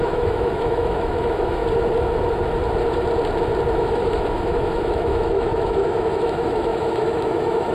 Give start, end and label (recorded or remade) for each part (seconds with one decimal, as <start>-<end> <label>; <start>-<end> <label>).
0.0-1.6 remade; 1.6-3.7 recorded; 3.7-7.7 remade